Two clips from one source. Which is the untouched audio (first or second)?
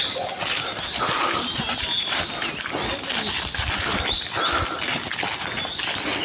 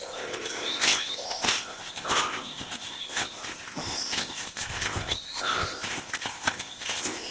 first